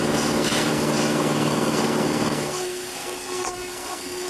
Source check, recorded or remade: remade